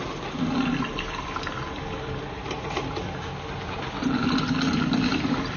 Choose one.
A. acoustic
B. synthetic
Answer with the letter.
A